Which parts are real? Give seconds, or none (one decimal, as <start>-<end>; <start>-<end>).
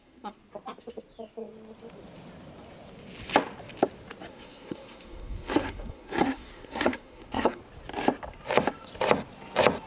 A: 0.4-4.3; 7.6-9.9